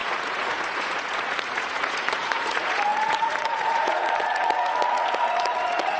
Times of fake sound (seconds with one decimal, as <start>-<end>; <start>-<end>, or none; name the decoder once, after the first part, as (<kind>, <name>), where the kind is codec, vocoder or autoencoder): 0.0-6.0 (vocoder, Vocos)